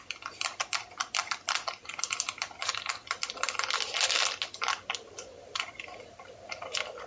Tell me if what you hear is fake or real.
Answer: real